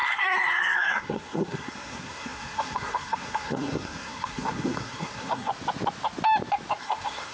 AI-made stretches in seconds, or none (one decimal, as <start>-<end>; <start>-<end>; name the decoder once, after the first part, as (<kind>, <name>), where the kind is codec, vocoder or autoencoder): 0.0-5.5 (codec, SNAC); 6.8-7.3